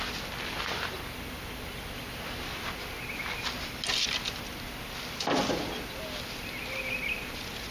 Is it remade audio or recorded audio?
recorded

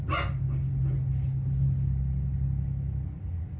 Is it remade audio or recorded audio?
recorded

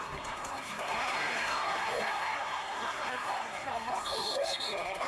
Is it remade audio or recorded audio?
remade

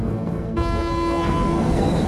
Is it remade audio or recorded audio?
remade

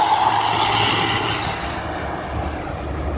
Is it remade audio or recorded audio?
recorded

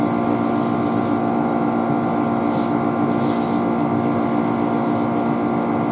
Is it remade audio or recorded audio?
recorded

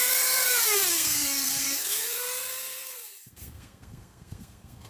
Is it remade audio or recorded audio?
remade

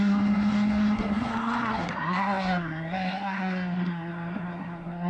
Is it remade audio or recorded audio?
remade